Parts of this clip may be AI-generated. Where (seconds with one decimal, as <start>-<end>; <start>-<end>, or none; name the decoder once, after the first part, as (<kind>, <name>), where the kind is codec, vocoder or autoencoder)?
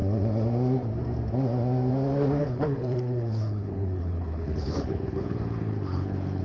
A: 2.4-6.4 (codec, HILCodec)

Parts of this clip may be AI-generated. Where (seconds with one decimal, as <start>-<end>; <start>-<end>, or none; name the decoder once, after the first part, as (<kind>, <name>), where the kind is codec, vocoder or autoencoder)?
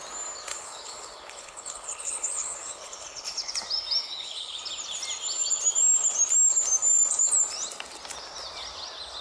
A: 0.5-3.5 (codec, HILCodec); 4.0-4.6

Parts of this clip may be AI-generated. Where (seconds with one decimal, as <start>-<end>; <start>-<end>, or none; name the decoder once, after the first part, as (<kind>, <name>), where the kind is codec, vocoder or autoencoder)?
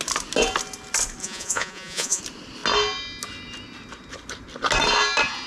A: 1.2-2.2 (vocoder, Vocos)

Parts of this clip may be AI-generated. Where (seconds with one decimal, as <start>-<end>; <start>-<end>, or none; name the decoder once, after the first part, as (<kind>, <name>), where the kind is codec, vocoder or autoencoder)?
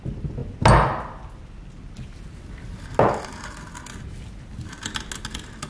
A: none